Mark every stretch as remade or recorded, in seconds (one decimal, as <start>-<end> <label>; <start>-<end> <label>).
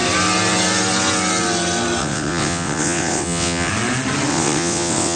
0.0-2.0 recorded; 2.0-3.7 remade; 3.7-4.3 recorded; 4.3-5.2 remade